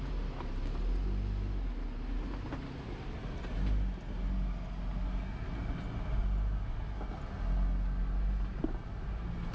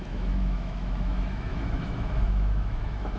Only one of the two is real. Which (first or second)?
first